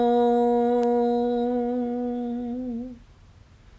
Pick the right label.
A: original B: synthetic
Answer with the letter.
A